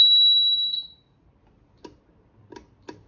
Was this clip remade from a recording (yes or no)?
no